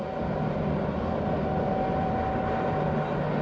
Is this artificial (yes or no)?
yes